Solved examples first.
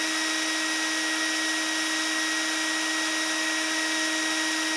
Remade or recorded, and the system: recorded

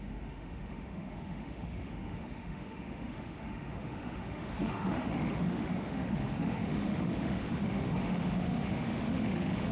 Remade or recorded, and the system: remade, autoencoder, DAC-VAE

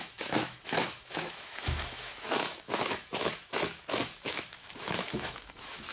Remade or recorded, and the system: remade, autoencoder, DAC-VAE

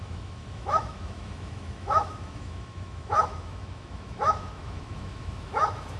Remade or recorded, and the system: remade, autoencoder, DAC-VAE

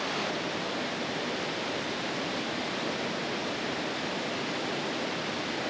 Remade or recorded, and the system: recorded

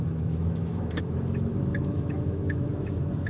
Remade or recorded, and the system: remade, autoencoder, DAC-VAE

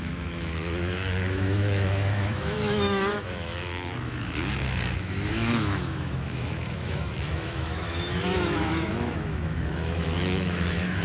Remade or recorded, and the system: remade, autoencoder, DAC-VAE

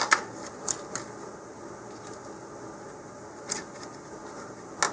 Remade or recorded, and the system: recorded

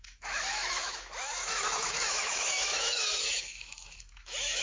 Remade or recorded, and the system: remade, autoencoder, DAC-VAE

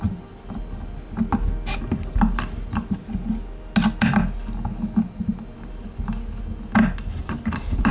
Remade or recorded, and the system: recorded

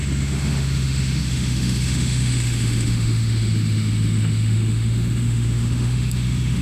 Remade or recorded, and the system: remade, autoencoder, DAC-VAE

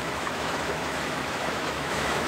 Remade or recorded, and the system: remade, autoencoder, DAC-VAE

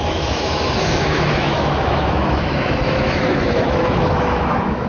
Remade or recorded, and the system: remade, autoencoder, DAC-VAE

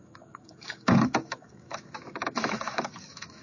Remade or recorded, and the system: remade, autoencoder, DAC-VAE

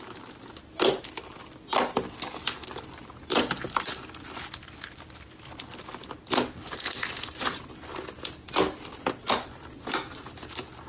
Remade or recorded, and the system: recorded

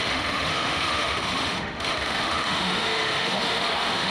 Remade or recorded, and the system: remade, autoencoder, DAC-VAE